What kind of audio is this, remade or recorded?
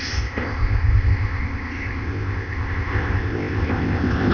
remade